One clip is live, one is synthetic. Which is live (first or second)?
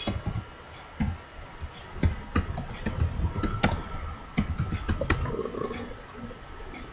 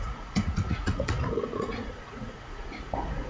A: first